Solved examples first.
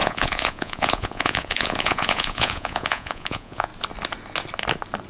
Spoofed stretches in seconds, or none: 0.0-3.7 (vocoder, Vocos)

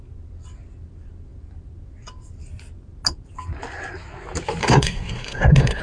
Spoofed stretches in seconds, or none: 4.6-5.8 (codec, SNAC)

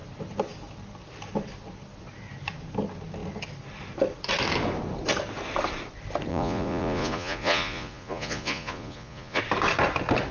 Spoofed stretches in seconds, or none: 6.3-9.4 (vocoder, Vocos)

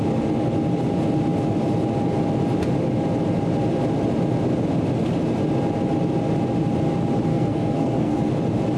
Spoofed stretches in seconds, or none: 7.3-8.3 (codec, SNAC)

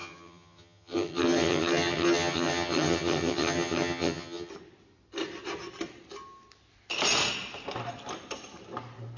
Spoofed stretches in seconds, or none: 0.0-4.5 (vocoder, HiFi-GAN)

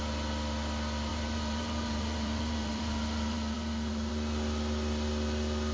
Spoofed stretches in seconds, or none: 1.1-4.1 (vocoder, BigVGAN v2)

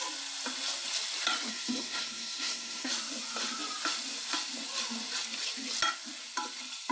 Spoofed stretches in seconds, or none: 1.5-2.9 (codec, SNAC)